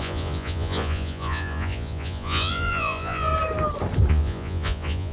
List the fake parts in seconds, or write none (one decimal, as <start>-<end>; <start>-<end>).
0.0-3.3; 4.1-5.1